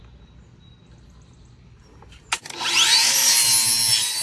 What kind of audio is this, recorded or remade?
recorded